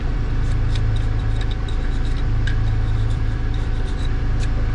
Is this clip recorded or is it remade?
remade